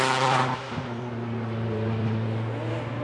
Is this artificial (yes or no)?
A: no